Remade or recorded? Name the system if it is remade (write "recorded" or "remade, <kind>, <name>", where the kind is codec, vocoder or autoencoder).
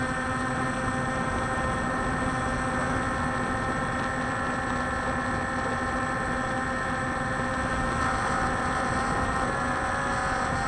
recorded